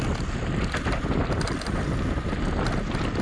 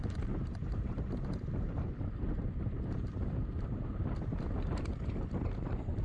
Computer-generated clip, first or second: second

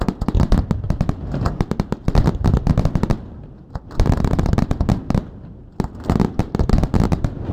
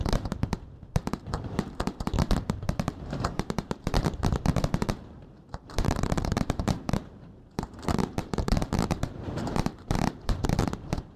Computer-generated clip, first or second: second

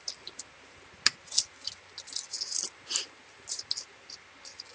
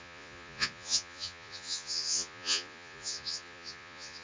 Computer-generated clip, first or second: second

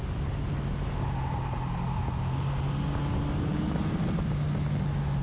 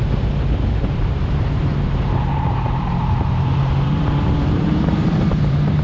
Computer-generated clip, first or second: second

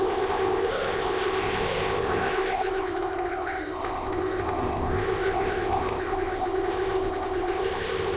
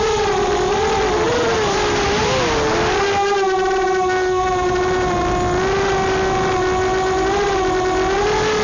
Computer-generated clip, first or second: first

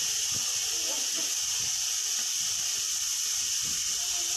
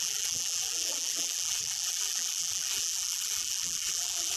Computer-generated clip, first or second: second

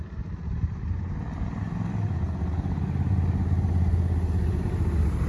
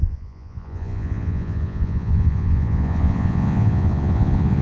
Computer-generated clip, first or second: second